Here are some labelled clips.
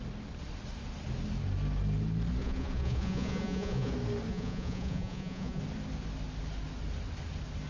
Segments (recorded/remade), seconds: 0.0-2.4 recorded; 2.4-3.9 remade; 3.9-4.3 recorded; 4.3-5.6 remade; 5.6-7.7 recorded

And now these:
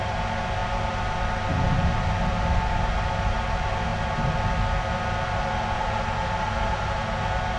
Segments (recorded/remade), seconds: 0.0-7.6 recorded